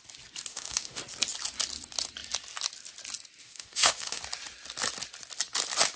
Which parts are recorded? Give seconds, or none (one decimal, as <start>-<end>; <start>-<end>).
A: 0.0-0.5; 1.0-3.4; 4.2-6.0